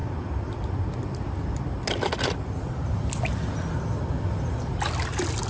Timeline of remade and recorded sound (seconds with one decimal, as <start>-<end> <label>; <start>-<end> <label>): 0.0-5.5 recorded